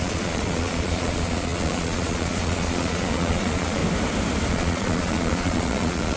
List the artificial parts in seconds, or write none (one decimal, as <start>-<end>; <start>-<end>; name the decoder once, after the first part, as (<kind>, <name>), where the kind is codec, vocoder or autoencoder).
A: 0.0-3.8 (vocoder, Vocos); 4.5-6.2